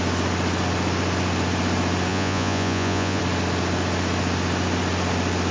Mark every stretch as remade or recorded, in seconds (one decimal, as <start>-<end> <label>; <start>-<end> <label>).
0.0-2.1 recorded; 2.1-3.2 remade; 3.2-5.5 recorded